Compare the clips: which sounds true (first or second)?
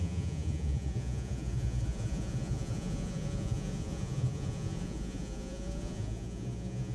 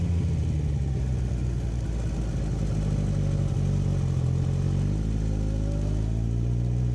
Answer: second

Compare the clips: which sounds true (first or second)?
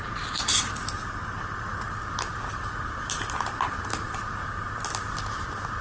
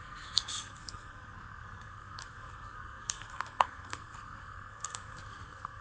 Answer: first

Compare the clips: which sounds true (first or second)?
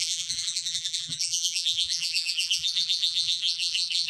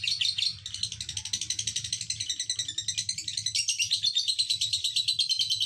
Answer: second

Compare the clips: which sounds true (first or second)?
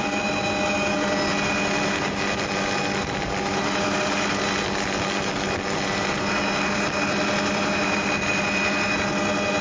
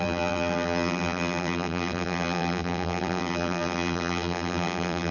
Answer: first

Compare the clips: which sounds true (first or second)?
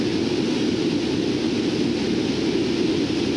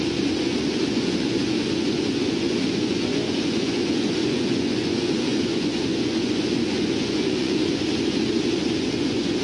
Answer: first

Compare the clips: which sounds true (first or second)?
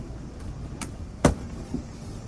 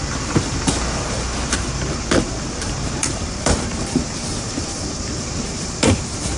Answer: first